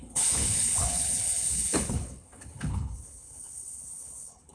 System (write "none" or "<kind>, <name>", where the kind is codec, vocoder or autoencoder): codec, HILCodec